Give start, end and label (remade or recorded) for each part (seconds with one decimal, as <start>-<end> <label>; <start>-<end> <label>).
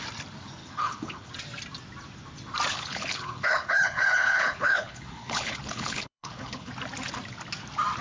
0.0-0.6 recorded; 0.6-1.3 remade; 1.3-2.7 recorded; 2.7-6.7 remade; 6.7-8.0 recorded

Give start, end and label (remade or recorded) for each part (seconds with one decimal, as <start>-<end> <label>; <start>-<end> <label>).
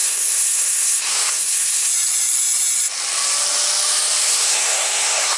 0.0-1.9 remade; 1.9-4.2 recorded; 4.2-5.4 remade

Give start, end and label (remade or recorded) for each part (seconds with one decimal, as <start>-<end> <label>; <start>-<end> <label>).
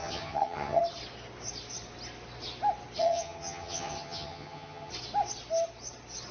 0.0-0.8 remade; 0.8-3.0 recorded; 3.0-4.9 remade; 4.9-6.3 recorded